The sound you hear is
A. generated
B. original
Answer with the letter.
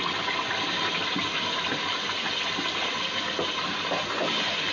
B